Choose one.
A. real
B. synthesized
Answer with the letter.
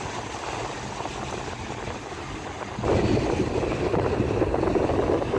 A